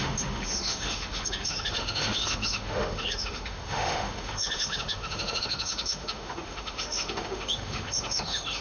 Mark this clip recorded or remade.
remade